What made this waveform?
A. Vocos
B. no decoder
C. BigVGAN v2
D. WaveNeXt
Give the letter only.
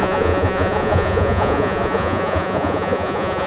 A